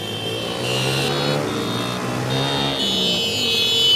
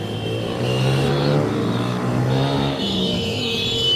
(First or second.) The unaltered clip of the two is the first